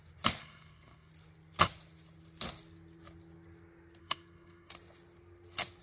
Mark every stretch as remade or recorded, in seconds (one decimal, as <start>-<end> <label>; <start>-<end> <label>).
0.0-0.4 recorded; 0.4-1.1 remade; 1.1-4.0 recorded; 4.0-4.7 remade; 4.7-5.8 recorded